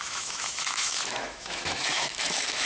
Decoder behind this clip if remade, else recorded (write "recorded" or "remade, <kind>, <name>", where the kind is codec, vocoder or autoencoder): remade, autoencoder, DAC-VAE